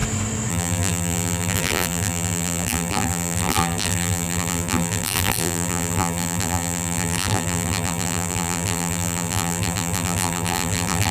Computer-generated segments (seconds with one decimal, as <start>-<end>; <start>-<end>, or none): 0.5-11.1